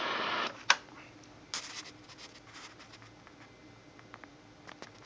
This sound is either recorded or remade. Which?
recorded